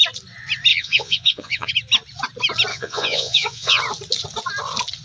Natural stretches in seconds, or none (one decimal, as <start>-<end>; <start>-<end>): 0.0-0.7; 1.7-2.7; 3.8-5.0